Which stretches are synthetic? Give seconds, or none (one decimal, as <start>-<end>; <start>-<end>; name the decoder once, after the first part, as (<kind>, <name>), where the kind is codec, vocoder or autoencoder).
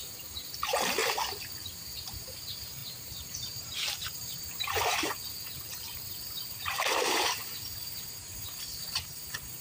0.0-1.0 (vocoder, BigVGAN v2); 1.8-9.6